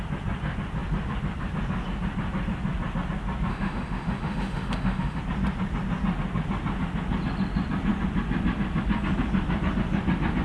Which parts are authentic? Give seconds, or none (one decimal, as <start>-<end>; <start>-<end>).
0.0-3.5; 5.2-10.4